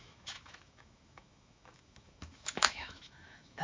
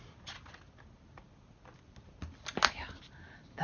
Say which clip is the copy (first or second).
first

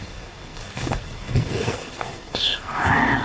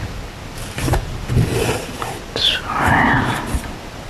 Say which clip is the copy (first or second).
first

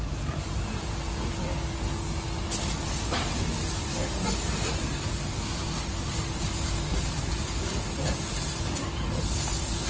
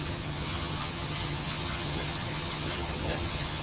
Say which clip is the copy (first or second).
second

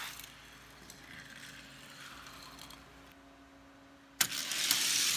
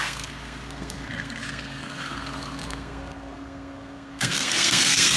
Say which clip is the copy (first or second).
second